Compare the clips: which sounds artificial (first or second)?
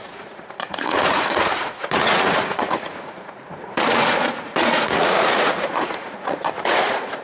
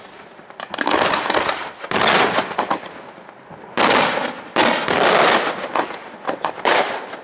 first